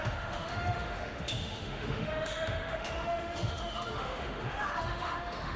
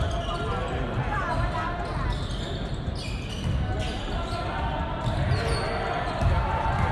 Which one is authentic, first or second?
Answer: second